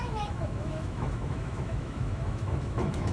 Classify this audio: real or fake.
fake